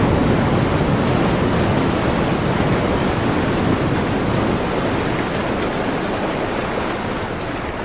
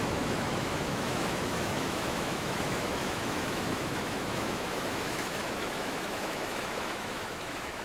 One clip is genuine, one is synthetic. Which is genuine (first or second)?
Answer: first